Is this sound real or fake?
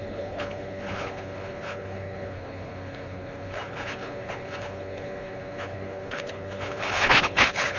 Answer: fake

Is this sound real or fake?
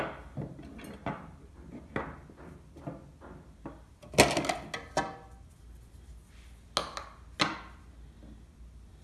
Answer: real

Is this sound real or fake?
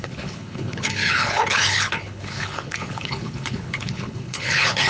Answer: fake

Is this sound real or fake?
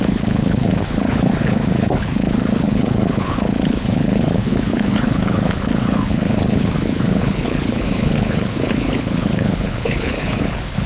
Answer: fake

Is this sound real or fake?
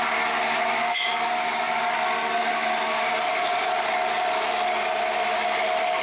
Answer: real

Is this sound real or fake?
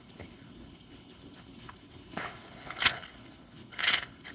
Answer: fake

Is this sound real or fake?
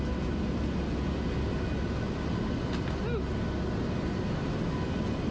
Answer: real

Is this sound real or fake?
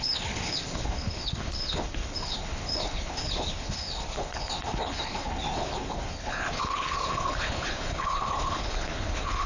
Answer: fake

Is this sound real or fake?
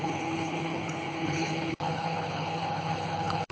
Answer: fake